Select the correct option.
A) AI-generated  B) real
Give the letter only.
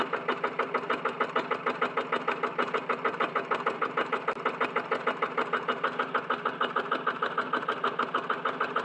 B